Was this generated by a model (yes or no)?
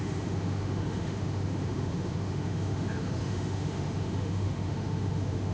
yes